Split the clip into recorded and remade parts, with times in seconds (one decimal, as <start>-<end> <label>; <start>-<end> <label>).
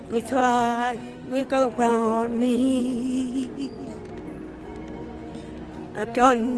0.0-0.4 recorded; 0.4-1.4 remade; 1.4-1.9 recorded; 1.9-2.8 remade; 2.8-5.8 recorded; 5.8-6.6 remade